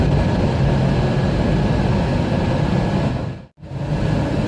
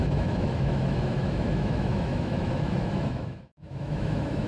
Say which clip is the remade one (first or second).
second